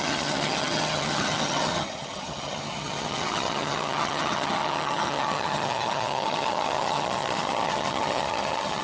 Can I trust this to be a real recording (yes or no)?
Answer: no